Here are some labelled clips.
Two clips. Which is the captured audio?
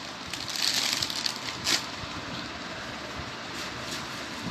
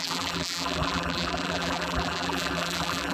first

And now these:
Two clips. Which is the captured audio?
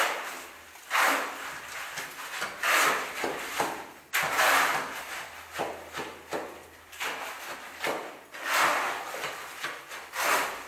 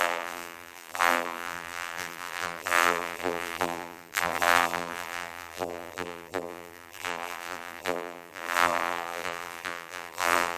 first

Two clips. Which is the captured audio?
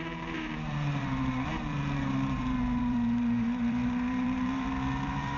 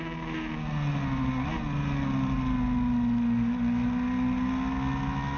second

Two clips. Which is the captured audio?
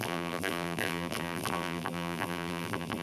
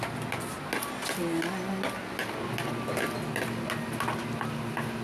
second